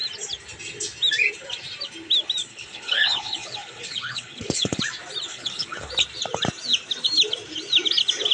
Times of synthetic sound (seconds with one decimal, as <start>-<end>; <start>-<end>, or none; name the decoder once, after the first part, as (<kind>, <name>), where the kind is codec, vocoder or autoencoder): 2.5-4.8 (codec, HILCodec); 5.3-5.9